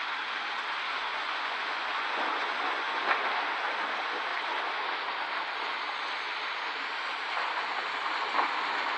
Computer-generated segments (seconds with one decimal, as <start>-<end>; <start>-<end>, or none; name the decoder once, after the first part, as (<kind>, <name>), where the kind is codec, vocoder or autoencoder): 1.1-3.0 (vocoder, Vocos)